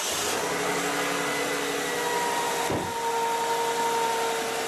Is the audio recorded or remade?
recorded